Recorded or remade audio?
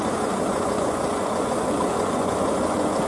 remade